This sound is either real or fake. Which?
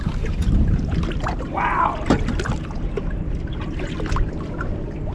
real